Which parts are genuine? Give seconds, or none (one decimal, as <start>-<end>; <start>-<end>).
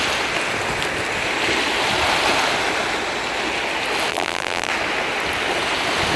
0.0-4.1; 4.7-6.2